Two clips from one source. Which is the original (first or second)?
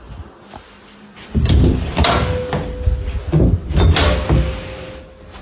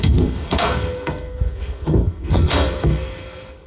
first